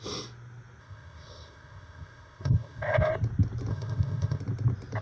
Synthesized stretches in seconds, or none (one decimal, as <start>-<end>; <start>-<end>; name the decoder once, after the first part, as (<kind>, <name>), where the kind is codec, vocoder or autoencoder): 0.8-3.1 (codec, ZipCodec); 3.7-4.4

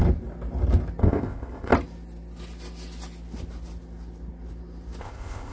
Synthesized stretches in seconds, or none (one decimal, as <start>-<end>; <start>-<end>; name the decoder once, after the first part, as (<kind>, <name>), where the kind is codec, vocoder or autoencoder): 1.0-1.7 (codec, ZipCodec); 5.0-5.5

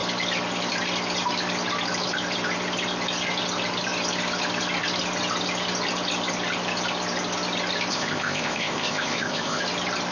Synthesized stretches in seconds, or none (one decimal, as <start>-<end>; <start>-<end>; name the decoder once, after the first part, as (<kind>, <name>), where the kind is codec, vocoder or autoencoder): 7.9-9.6 (codec, ZipCodec)